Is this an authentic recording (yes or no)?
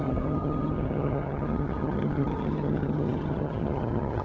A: no